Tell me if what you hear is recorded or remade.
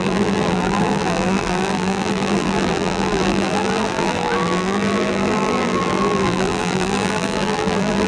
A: remade